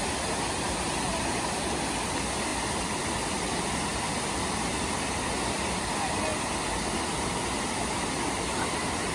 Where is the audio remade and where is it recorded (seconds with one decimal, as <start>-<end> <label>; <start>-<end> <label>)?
0.0-3.9 recorded; 3.9-4.6 remade; 4.6-9.1 recorded